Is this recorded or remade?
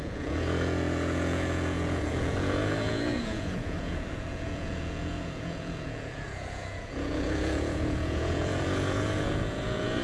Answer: remade